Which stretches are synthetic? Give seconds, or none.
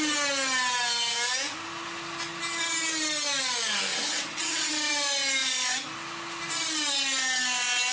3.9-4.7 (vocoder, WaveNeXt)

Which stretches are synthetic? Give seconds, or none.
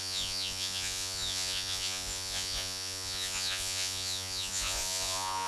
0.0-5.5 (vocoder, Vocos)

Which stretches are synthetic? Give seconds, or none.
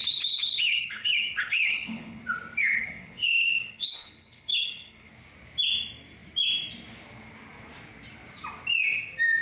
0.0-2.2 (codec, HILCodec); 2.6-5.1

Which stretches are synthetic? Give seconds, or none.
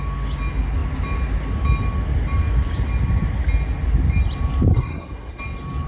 4.7-5.4 (codec, SNAC)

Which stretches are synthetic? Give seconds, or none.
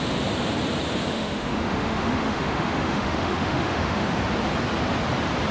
1.1-4.2 (autoencoder, DAC-VAE)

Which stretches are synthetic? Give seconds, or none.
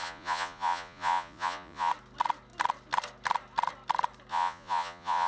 0.0-1.9 (vocoder, Vocos); 4.3-5.3